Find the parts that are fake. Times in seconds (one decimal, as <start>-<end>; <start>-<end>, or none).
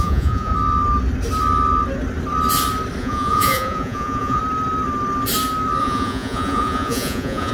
0.0-0.5; 3.0-4.4; 5.8-7.5